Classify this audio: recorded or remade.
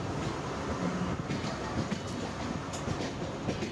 recorded